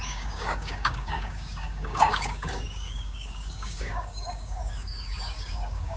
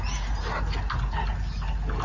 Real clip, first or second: second